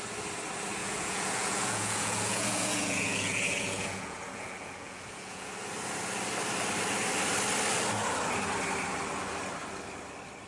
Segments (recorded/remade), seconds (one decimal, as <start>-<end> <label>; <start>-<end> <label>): 0.0-0.8 recorded; 0.8-5.5 remade; 5.5-10.5 recorded